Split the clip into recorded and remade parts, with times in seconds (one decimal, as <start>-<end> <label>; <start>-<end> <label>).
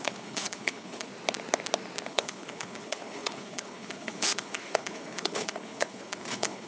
0.0-1.1 remade; 1.1-2.1 recorded; 2.1-6.7 remade